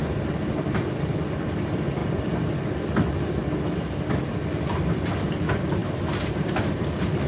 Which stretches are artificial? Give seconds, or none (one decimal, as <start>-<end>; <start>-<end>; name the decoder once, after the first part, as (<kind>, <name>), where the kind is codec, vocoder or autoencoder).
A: 5.8-6.8 (vocoder, BigVGAN v2)